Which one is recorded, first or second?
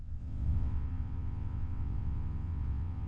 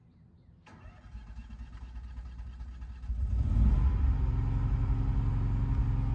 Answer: second